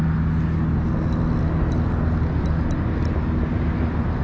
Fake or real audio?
real